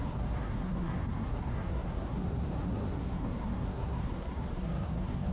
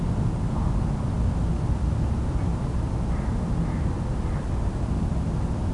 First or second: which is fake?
first